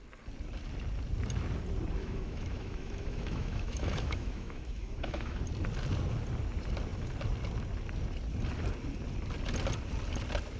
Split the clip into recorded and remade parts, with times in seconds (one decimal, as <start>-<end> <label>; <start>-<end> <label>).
0.0-2.0 recorded; 2.0-5.4 remade; 5.4-10.6 recorded